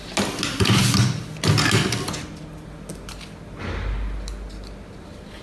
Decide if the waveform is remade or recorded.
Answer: recorded